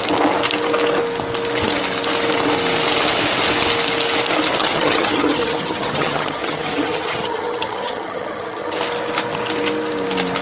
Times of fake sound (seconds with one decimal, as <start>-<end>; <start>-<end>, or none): 4.6-8.8